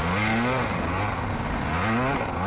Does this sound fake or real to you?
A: real